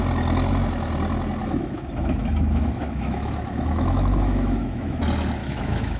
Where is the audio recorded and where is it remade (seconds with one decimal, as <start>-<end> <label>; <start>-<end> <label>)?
0.0-1.4 recorded; 1.4-5.0 remade; 5.0-5.4 recorded; 5.4-6.0 remade